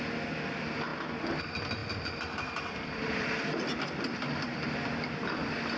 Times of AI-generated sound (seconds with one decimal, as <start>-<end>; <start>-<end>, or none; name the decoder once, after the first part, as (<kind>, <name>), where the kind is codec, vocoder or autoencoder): none

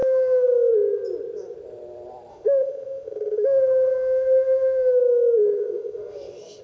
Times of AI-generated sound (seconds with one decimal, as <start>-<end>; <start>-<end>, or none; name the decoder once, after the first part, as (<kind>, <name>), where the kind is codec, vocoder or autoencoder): 0.0-0.7 (autoencoder, DAC-VAE); 2.3-6.6

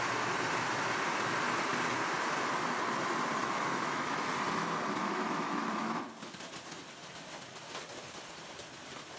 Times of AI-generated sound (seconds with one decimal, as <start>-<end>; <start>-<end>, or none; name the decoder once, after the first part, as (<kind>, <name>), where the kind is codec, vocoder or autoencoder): 3.4-4.3 (autoencoder, DAC-VAE); 5.0-6.1

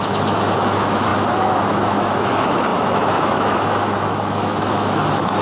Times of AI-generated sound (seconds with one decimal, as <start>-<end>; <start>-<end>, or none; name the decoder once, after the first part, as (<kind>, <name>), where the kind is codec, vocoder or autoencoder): 0.0-5.4 (autoencoder, DAC-VAE)